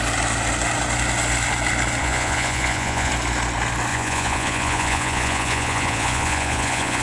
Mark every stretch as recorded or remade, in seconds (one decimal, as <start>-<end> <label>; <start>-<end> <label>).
0.0-2.0 recorded; 2.0-3.1 remade; 3.1-3.9 recorded; 3.9-7.0 remade